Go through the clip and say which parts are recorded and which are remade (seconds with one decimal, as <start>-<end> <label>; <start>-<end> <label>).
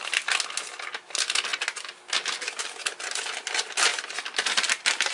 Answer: 0.0-5.1 recorded